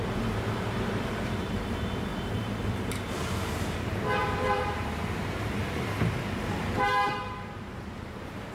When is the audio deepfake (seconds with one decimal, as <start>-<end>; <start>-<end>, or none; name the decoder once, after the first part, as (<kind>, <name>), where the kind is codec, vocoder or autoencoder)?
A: 0.0-5.6 (vocoder, BigVGAN v2); 6.4-8.5